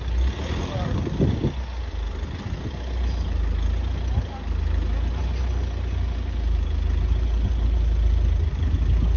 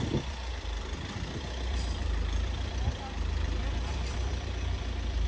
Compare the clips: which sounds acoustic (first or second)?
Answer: first